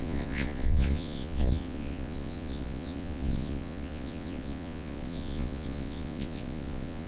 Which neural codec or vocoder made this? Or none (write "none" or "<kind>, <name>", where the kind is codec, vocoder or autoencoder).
vocoder, Vocos